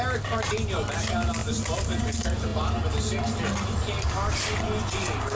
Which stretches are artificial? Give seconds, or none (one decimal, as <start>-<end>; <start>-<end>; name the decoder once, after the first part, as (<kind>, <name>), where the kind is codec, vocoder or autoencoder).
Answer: 1.4-2.0 (vocoder, BigVGAN v2)